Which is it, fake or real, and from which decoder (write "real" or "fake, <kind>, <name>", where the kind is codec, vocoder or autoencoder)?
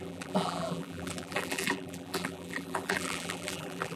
fake, vocoder, BigVGAN v2